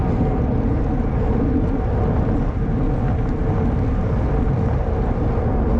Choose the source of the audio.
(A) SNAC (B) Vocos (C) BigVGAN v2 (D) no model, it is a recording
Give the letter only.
D